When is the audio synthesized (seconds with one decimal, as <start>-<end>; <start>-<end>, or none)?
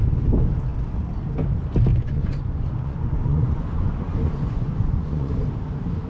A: 1.9-5.4